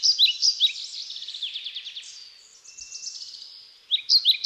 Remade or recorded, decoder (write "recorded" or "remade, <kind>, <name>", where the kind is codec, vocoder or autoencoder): recorded